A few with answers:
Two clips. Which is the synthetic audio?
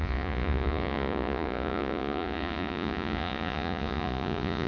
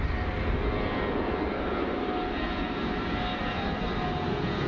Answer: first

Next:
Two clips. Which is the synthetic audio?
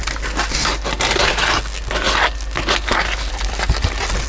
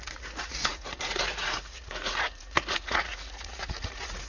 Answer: second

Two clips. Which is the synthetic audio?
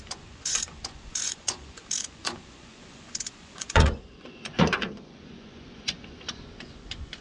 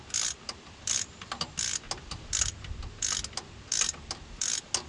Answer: first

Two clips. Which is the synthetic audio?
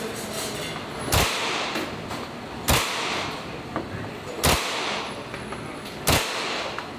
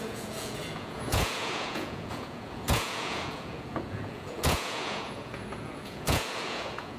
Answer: second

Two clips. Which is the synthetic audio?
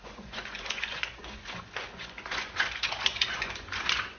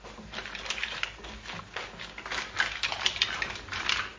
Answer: first